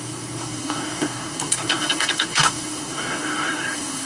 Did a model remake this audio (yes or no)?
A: yes